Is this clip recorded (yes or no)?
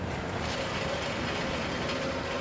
yes